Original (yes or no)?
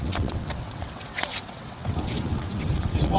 no